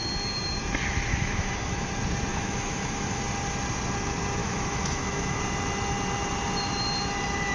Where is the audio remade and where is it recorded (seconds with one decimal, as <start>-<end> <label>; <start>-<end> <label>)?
0.0-1.1 recorded; 1.1-1.9 remade; 1.9-2.3 recorded; 2.3-3.2 remade; 3.2-4.4 recorded; 4.4-5.4 remade; 5.4-7.5 recorded